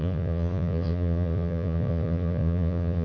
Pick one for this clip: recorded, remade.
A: remade